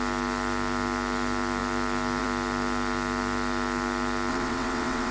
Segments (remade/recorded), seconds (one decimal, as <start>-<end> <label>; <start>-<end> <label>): 0.0-4.3 recorded; 4.3-5.1 remade